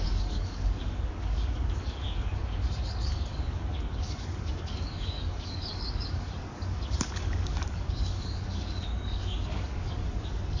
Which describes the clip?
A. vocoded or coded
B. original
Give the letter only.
A